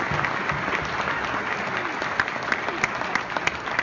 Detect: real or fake real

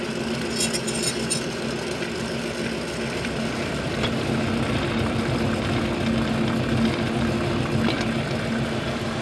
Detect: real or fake real